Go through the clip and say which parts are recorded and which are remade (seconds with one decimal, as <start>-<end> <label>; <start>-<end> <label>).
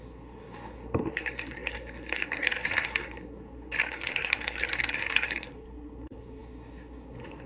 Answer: 0.0-7.5 remade